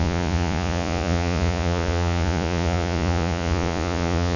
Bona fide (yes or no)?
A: no